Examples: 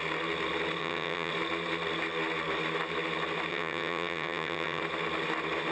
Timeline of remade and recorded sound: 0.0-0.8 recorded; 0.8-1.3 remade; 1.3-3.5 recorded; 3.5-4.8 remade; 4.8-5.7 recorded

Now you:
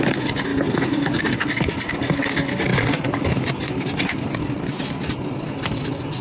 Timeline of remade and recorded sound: 0.0-6.2 recorded

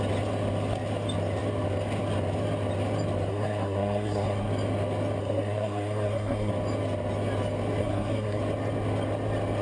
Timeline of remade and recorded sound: 0.0-3.3 recorded; 3.3-4.5 remade; 4.5-5.2 recorded; 5.2-6.5 remade; 6.5-7.8 recorded; 7.8-8.4 remade; 8.4-9.6 recorded

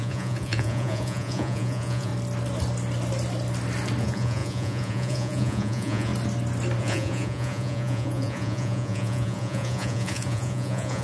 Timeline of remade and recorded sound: 0.0-2.1 remade; 2.1-4.0 recorded; 4.0-6.1 remade; 6.1-6.8 recorded; 6.8-11.0 remade

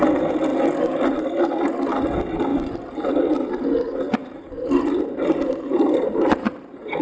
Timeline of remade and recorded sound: 0.0-4.2 recorded; 4.2-7.0 remade